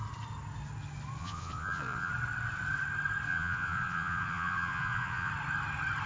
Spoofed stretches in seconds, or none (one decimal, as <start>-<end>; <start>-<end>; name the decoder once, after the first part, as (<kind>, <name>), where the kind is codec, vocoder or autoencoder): 1.2-2.1 (vocoder, Vocos); 3.3-5.3